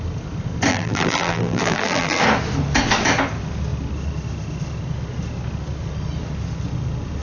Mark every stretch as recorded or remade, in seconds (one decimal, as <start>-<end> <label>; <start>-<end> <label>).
0.0-0.7 recorded; 0.7-2.2 remade; 2.2-7.2 recorded